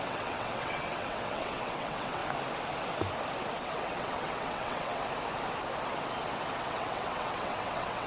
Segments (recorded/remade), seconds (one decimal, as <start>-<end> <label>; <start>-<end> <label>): 0.0-2.2 remade; 2.2-3.6 recorded; 3.6-5.0 remade; 5.0-6.6 recorded; 6.6-8.1 remade